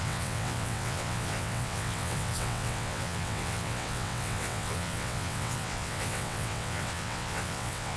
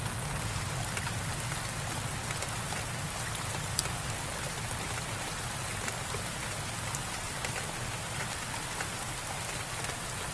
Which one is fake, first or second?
first